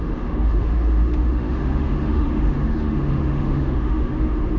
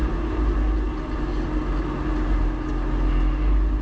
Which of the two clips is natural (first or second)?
second